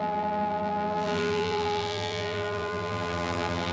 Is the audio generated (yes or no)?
yes